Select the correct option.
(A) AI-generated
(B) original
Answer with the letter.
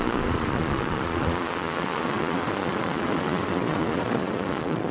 A